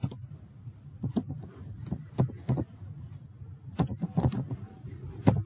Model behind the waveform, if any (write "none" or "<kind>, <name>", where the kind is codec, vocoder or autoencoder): none